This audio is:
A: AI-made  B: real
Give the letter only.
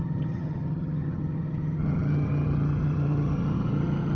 A